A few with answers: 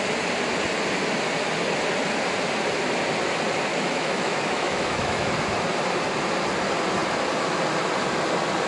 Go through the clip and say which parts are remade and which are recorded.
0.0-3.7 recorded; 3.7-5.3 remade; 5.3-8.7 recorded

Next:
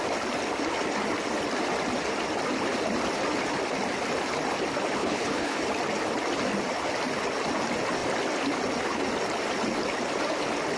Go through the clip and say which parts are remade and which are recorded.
0.0-5.0 recorded; 5.0-5.6 remade; 5.6-10.8 recorded